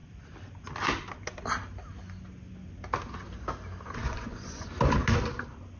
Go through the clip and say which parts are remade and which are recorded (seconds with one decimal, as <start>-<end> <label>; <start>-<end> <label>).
0.0-4.0 recorded; 4.0-4.7 remade; 4.7-5.8 recorded